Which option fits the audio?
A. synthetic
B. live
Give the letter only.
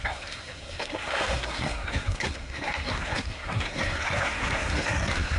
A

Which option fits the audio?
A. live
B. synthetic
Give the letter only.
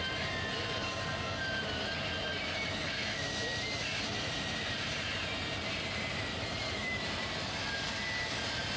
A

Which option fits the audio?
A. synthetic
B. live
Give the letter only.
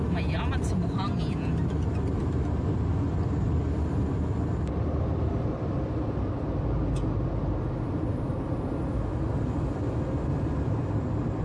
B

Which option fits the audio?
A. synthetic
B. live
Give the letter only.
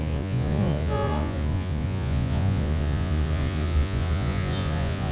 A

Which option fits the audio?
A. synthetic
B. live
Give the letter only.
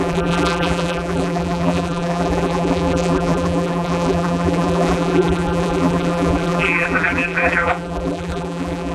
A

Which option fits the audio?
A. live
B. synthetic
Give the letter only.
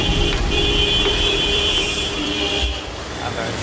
B